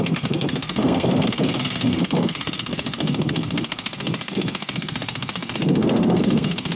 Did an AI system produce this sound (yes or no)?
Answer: yes